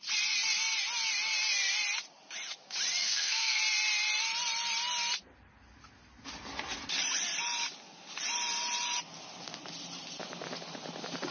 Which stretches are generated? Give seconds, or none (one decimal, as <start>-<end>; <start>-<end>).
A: 3.0-3.6

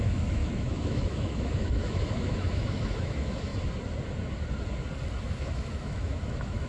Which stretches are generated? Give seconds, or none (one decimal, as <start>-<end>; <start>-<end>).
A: 0.0-3.5; 5.2-6.7

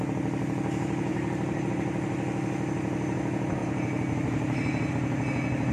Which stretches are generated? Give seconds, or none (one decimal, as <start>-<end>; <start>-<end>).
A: 1.1-1.7; 3.6-4.9